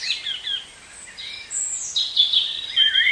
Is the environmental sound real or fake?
real